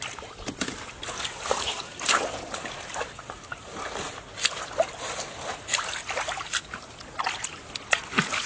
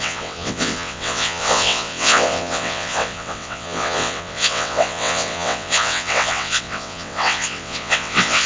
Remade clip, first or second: second